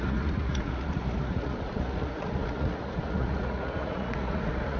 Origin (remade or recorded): remade